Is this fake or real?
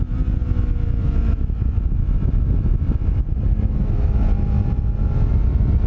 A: real